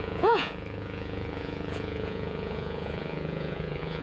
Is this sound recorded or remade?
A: remade